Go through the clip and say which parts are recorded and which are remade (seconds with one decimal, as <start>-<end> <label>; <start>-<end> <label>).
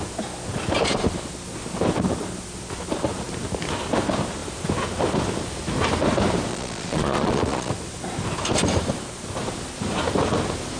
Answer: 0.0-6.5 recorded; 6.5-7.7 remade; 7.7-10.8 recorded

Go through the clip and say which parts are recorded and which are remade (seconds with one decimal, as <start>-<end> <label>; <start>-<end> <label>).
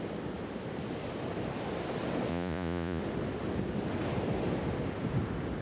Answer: 0.0-2.3 recorded; 2.3-3.0 remade; 3.0-5.6 recorded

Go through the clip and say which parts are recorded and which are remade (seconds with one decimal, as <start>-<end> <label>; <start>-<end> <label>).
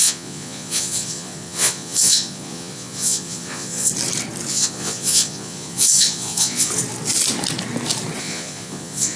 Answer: 0.0-3.9 remade; 3.9-4.5 recorded; 4.5-6.7 remade; 6.7-8.2 recorded; 8.2-9.2 remade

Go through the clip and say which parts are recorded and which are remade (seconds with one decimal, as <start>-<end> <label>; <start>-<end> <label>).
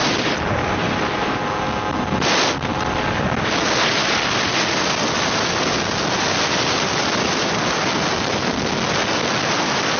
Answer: 0.0-10.0 recorded